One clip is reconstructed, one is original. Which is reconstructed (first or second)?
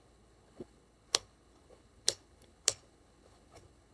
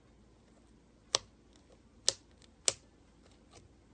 first